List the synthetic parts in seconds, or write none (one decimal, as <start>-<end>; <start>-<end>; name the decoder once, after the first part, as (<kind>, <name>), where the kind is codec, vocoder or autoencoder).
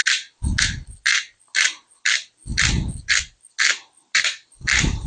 none